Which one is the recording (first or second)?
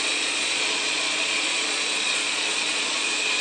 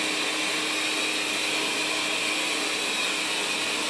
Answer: second